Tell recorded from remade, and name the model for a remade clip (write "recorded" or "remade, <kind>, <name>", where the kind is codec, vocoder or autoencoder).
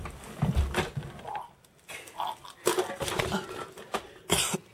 recorded